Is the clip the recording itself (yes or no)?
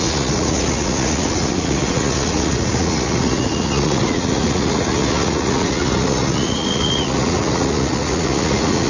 no